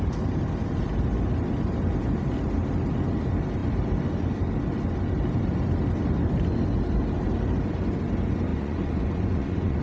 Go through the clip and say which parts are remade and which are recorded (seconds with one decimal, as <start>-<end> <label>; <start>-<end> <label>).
0.0-8.5 recorded; 8.5-9.8 remade